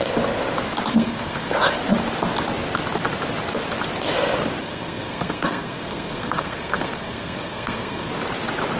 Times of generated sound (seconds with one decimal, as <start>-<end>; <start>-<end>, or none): 0.9-1.5; 4.6-8.1